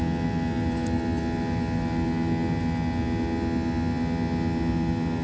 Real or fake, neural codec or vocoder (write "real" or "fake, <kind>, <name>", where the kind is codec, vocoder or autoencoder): real